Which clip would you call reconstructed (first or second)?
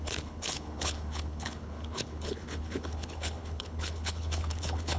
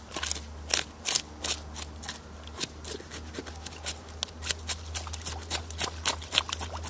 first